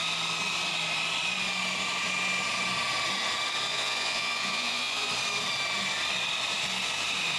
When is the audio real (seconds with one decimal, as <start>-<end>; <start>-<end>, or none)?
0.0-3.7; 5.1-7.4